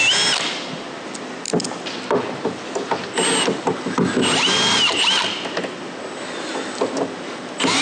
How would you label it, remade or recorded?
recorded